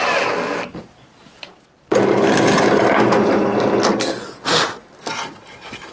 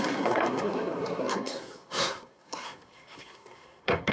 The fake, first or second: second